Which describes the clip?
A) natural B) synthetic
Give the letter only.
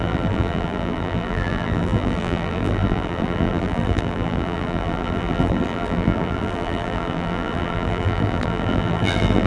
B